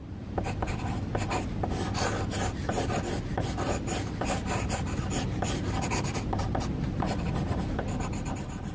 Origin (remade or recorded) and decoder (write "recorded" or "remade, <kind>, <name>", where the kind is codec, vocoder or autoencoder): recorded